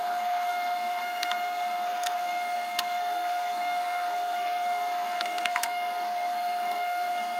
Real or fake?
fake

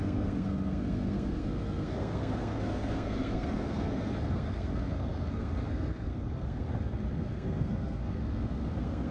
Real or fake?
fake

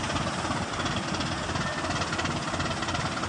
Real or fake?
real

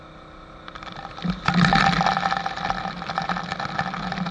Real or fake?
real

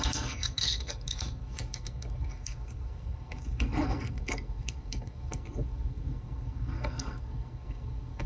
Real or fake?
fake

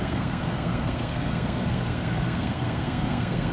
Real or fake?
fake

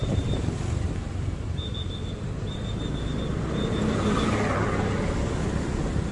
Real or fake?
real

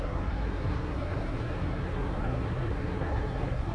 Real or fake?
fake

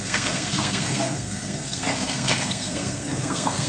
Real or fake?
fake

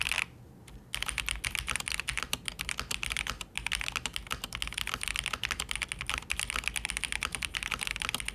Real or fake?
real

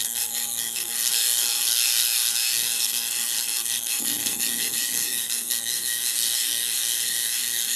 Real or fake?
fake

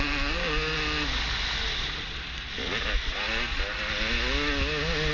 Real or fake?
real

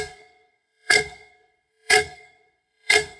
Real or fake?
fake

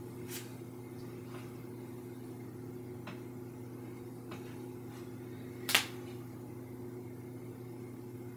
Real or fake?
real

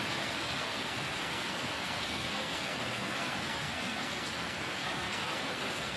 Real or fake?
fake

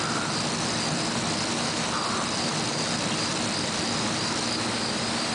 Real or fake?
real